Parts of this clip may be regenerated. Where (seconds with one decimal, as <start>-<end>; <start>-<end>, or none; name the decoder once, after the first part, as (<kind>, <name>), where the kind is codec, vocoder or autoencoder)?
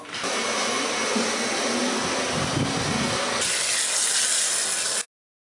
none